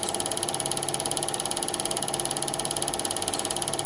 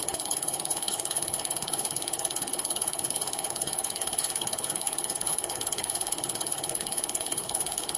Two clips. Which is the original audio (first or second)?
first